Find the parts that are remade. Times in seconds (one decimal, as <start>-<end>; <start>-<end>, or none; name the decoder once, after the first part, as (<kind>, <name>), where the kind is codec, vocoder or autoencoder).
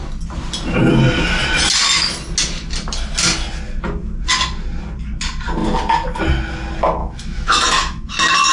7.0-8.1 (autoencoder, DAC-VAE)